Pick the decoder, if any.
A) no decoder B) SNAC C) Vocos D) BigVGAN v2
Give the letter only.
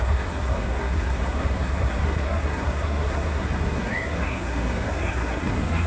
B